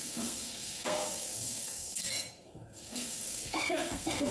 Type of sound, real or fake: fake